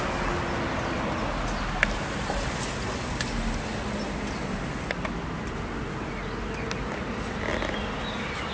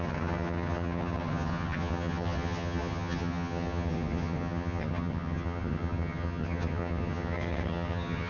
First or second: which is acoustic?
first